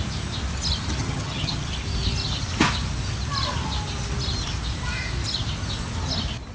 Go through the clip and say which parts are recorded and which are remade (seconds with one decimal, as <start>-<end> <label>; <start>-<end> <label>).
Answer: 0.0-1.0 recorded; 1.0-1.7 remade; 1.7-6.5 recorded